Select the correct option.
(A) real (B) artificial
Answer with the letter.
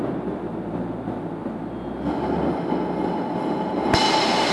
A